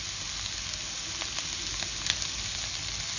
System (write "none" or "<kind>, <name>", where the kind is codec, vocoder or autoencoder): none